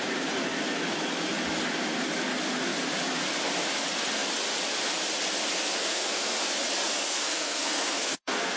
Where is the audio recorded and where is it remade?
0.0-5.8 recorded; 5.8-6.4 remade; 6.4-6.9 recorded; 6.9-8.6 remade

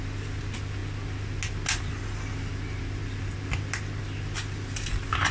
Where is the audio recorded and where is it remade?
0.0-5.3 recorded